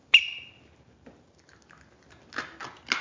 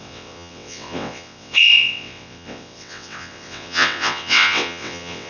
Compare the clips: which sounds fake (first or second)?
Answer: second